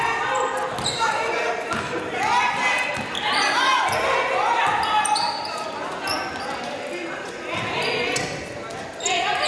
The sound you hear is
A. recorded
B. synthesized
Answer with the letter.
A